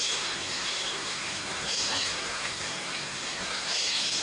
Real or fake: fake